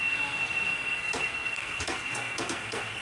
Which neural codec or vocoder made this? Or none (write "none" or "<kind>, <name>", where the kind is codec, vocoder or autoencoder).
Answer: codec, SNAC